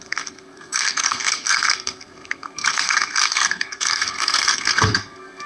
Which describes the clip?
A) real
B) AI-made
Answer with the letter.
B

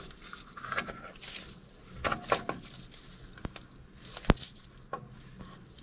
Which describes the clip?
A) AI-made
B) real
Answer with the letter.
B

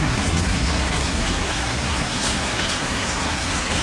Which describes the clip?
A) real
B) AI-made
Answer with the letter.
B